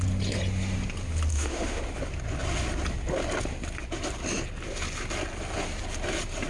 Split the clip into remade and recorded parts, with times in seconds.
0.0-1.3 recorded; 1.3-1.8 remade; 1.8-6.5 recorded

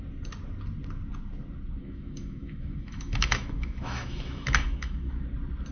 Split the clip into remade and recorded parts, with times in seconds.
0.0-1.8 recorded; 1.8-5.2 remade; 5.2-5.7 recorded

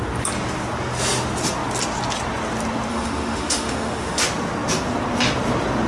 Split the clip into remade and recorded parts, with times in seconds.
0.0-2.9 recorded; 2.9-4.2 remade; 4.2-5.9 recorded

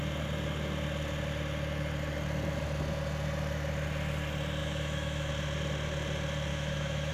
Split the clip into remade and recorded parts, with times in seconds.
0.0-4.6 recorded; 4.6-5.3 remade; 5.3-6.5 recorded; 6.5-7.1 remade